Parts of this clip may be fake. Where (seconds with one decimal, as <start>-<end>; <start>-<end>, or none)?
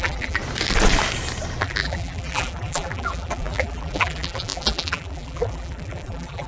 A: 0.0-0.4; 1.6-6.5